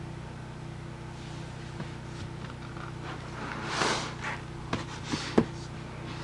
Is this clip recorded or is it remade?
recorded